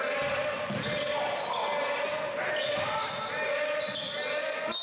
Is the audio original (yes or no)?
yes